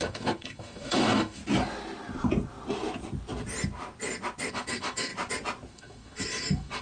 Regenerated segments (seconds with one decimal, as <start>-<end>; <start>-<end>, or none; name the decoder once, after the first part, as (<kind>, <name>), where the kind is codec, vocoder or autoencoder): 0.0-1.4 (autoencoder, DAC-VAE); 4.5-5.1; 5.7-6.8